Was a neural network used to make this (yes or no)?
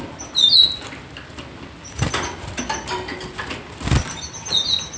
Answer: no